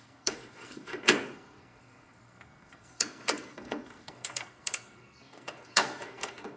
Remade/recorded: remade